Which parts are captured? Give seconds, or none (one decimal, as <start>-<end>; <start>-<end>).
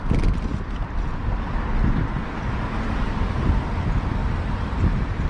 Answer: 0.0-0.5; 3.7-4.2